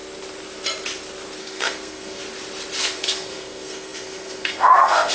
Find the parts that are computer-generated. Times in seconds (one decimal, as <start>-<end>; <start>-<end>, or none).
1.4-2.2; 2.8-5.1